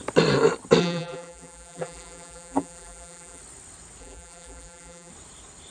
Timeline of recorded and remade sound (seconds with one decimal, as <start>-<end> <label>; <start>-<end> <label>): 0.0-0.8 recorded; 0.8-3.4 remade; 3.4-4.0 recorded; 4.0-5.1 remade; 5.1-5.7 recorded